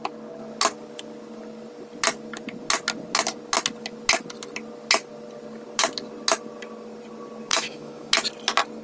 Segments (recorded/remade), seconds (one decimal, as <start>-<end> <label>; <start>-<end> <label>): 0.0-7.5 recorded; 7.5-8.1 remade; 8.1-8.8 recorded